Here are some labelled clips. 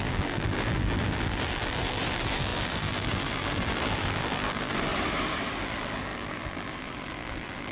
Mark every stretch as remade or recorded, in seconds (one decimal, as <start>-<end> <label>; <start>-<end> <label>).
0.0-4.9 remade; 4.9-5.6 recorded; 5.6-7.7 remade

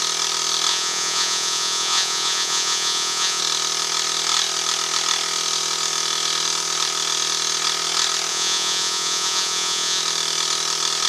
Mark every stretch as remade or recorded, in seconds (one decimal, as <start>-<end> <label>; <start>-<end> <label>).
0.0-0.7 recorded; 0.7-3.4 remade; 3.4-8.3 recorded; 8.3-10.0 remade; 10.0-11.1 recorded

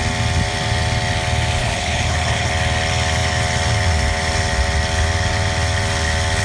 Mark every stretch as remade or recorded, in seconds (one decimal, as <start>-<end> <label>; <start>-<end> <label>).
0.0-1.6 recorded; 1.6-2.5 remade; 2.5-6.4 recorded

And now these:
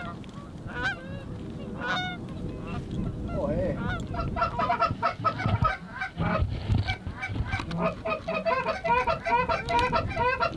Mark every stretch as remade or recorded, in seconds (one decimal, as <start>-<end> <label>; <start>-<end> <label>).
0.0-10.6 recorded

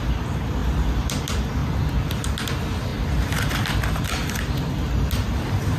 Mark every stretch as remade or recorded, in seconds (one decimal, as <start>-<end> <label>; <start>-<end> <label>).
0.0-5.8 recorded

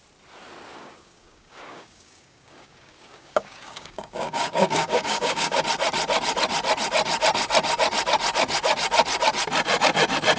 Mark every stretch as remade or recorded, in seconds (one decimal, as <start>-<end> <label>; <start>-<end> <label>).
0.0-0.7 recorded; 0.7-5.6 remade; 5.6-10.4 recorded

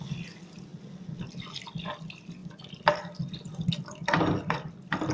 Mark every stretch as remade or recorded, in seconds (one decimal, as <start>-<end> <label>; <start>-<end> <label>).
0.0-5.1 recorded

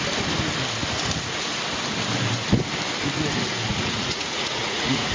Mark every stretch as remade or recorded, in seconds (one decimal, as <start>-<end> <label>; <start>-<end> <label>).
0.0-3.7 recorded; 3.7-5.1 remade